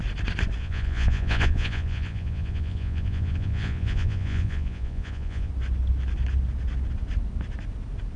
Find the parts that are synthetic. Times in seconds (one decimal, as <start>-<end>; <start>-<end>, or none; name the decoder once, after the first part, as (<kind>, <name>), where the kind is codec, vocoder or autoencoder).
0.6-5.5 (vocoder, Vocos)